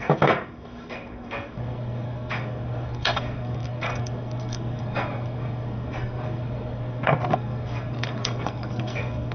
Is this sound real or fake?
fake